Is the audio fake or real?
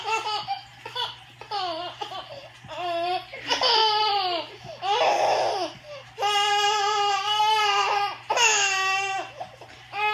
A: real